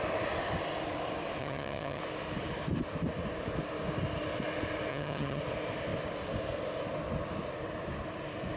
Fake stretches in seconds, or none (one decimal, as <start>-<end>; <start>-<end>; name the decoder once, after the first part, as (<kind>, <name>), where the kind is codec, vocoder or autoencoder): 1.4-2.0 (vocoder, HiFi-GAN); 4.9-5.4